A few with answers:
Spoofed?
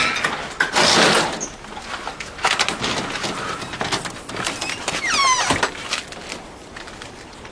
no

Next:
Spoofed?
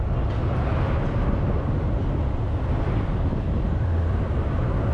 no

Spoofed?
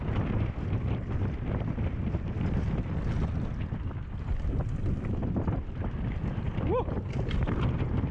no